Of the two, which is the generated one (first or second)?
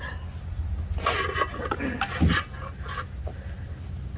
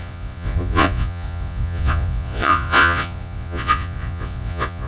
second